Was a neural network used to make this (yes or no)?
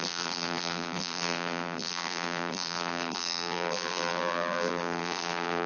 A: yes